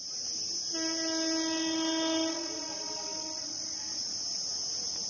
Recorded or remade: recorded